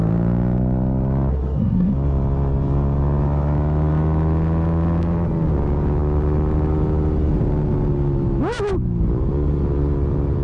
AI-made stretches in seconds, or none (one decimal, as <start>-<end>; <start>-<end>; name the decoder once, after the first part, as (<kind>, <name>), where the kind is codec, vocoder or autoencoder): 1.3-1.9 (codec, SNAC)